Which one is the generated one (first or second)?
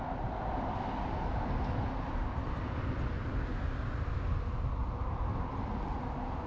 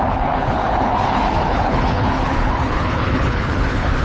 second